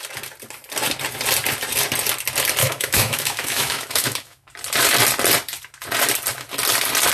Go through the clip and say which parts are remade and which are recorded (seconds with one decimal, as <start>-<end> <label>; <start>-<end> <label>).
0.0-2.6 recorded; 2.6-4.5 remade; 4.5-7.1 recorded